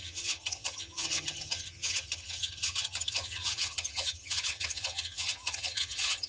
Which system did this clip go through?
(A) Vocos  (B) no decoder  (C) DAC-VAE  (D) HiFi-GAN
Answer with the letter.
D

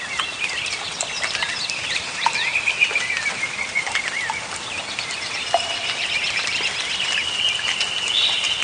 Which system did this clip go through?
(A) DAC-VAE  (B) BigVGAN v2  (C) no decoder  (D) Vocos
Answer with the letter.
B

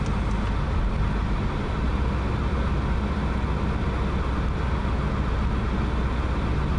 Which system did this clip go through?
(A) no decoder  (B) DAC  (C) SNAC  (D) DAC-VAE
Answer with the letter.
A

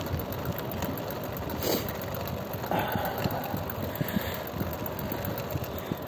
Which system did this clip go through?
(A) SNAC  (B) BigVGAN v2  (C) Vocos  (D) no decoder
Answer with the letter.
D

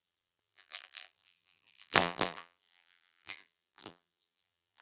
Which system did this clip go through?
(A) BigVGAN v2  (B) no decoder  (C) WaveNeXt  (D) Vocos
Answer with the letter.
A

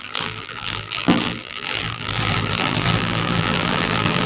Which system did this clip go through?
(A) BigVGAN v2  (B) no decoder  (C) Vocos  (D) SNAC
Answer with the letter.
A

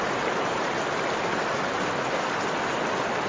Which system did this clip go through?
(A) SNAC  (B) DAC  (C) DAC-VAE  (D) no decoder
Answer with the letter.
D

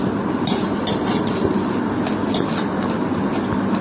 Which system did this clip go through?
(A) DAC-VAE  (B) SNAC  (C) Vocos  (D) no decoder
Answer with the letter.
D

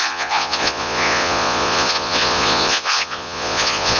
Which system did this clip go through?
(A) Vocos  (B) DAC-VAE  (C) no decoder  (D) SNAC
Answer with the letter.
A